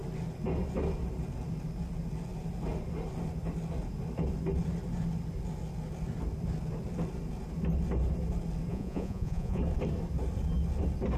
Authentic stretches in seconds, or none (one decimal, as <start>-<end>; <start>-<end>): 0.0-8.7; 9.6-11.2